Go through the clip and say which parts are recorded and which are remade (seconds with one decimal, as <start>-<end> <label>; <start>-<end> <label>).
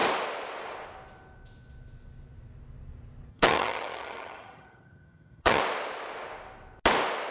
0.0-3.3 recorded; 3.3-5.6 remade; 5.6-7.3 recorded